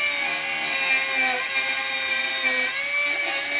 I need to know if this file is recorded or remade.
recorded